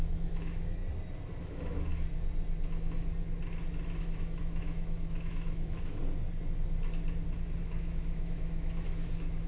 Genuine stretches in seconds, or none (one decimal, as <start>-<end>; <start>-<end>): 0.8-1.4; 1.9-4.0; 6.0-7.6